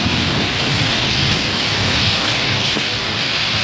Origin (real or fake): fake